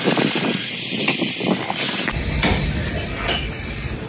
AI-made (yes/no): no